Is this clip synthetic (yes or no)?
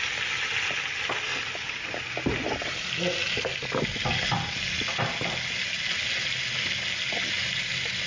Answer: no